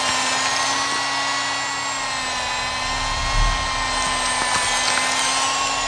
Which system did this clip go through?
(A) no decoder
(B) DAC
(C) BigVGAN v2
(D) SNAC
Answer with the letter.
A